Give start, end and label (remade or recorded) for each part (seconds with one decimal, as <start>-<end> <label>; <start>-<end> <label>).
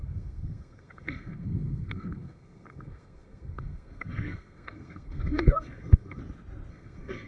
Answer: 0.0-6.2 remade; 6.2-6.7 recorded; 6.7-7.3 remade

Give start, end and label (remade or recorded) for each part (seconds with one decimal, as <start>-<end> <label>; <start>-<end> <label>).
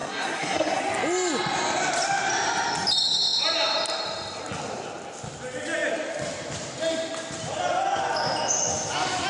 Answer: 0.0-0.8 remade; 0.8-9.3 recorded